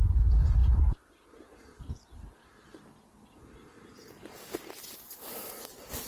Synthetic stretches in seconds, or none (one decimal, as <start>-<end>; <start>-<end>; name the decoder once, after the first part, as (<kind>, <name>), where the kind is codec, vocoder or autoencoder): none